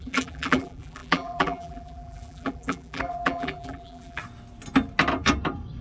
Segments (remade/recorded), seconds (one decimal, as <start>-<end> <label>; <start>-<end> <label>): 0.0-4.2 remade; 4.2-5.8 recorded